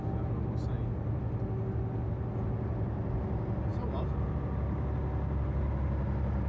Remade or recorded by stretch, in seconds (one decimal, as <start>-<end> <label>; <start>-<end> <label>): 0.0-6.5 recorded